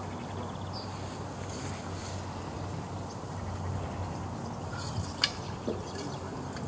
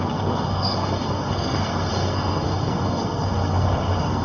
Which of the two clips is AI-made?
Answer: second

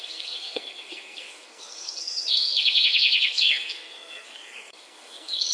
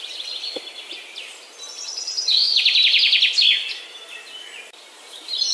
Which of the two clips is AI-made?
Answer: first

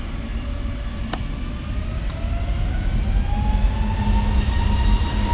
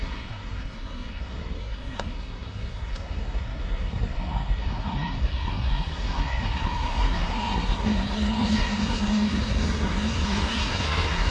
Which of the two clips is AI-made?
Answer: second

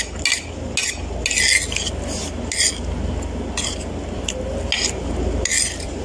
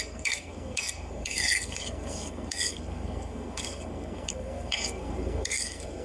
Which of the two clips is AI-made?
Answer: second